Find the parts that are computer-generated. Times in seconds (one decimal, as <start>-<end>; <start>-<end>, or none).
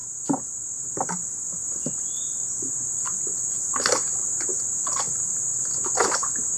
0.0-2.7